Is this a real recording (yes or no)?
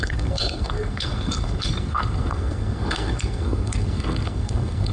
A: no